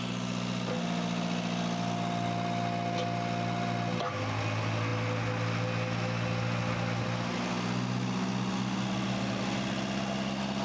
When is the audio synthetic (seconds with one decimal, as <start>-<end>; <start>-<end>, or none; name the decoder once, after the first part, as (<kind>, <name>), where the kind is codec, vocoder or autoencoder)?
none